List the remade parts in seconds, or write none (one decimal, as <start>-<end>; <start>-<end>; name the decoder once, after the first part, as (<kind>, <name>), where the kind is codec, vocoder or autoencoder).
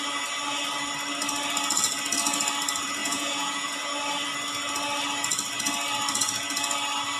3.0-3.9 (vocoder, Vocos)